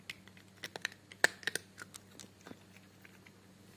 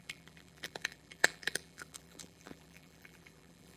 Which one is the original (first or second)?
first